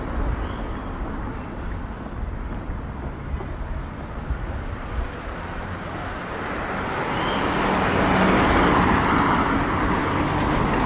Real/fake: real